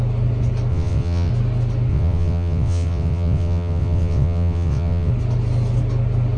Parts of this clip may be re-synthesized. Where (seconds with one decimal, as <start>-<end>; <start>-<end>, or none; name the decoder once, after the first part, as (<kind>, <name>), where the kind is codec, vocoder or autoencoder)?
0.7-1.3 (vocoder, WaveNeXt); 1.9-5.1